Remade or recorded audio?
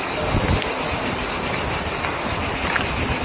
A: recorded